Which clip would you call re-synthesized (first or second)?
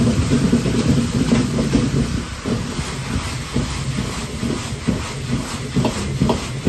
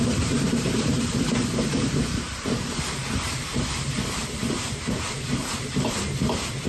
second